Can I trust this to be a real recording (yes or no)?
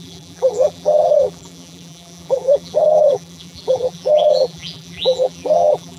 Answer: no